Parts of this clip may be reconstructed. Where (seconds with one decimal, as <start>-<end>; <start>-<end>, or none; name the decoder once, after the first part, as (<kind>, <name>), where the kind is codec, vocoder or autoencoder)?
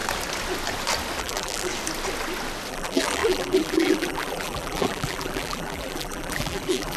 1.2-1.7 (vocoder, BigVGAN v2); 2.7-7.0